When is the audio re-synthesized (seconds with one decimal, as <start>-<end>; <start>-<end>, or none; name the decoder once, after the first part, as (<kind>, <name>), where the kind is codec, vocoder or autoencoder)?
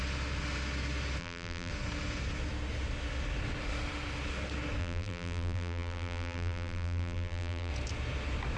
1.2-1.7 (vocoder, BigVGAN v2); 4.8-7.7